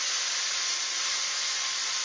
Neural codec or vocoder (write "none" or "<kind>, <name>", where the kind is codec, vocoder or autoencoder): none